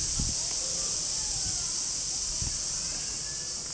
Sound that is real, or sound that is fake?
real